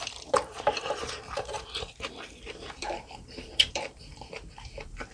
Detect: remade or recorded remade